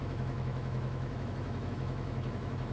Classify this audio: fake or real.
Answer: fake